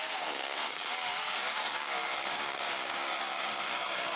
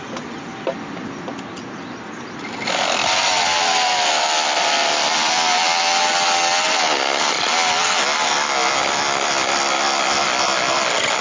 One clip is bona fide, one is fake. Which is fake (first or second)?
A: first